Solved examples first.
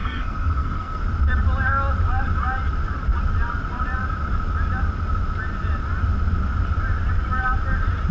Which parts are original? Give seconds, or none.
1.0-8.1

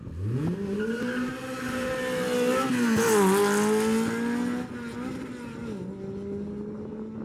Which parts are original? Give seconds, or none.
0.0-7.2